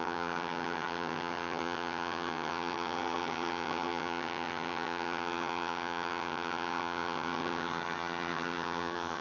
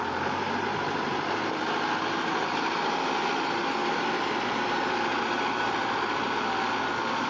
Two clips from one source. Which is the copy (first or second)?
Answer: first